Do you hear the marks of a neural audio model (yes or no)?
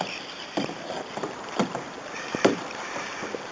yes